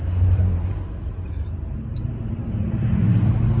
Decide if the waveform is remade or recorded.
remade